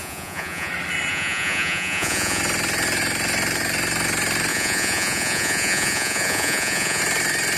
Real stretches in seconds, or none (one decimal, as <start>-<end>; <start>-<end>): 0.7-1.1; 2.4-4.5; 7.0-7.6